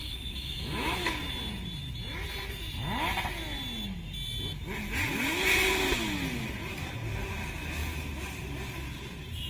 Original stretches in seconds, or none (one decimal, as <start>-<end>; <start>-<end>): 1.1-9.5